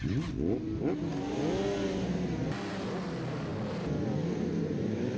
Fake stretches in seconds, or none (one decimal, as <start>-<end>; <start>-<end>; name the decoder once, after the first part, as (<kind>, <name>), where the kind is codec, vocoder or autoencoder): none